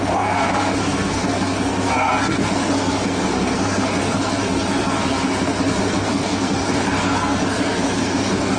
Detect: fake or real fake